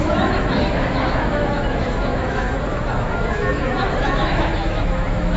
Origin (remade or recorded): remade